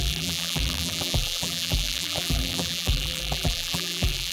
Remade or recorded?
remade